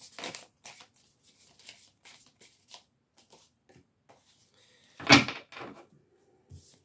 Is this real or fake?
real